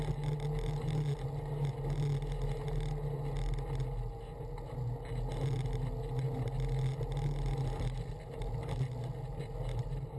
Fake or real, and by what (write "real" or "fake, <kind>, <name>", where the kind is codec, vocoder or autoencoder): real